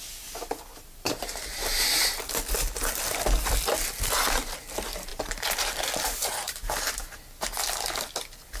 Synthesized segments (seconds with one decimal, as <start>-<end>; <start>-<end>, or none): 0.7-2.3; 5.1-7.6